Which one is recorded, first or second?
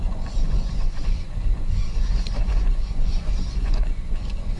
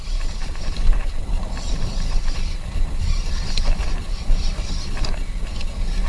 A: second